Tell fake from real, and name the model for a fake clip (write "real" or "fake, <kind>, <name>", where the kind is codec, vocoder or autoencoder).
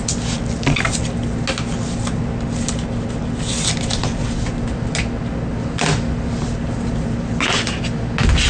real